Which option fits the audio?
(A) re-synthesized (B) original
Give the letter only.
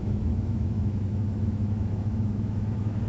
A